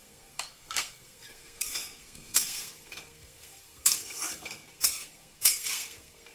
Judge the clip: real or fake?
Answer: fake